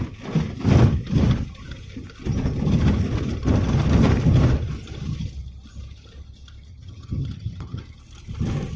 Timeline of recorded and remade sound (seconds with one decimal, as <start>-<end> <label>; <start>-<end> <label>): 0.0-6.7 recorded; 6.7-7.8 remade; 7.8-8.8 recorded